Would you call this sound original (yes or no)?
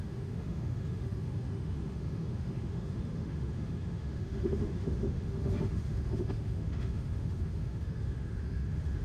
no